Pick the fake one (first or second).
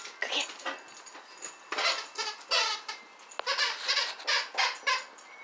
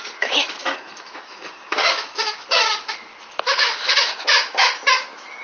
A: second